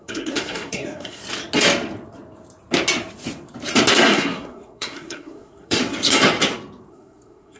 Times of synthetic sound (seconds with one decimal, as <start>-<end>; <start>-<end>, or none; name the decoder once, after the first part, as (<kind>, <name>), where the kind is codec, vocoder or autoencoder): 0.0-1.2 (codec, SNAC); 3.9-5.8; 6.9-7.6